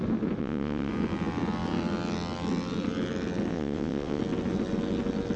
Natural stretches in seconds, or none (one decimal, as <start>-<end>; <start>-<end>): 0.0-0.4; 0.9-3.5; 4.2-5.4